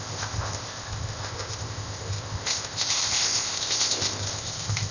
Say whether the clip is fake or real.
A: fake